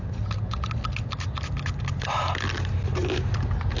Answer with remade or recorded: recorded